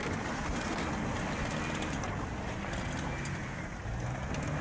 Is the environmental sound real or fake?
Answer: real